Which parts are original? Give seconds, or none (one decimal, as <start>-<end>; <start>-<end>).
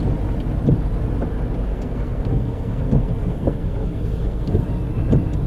0.0-1.7; 4.7-5.5